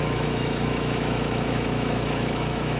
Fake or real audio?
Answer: fake